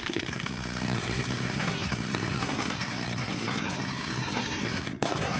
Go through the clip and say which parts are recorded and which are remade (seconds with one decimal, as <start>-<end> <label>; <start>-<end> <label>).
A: 0.0-5.4 remade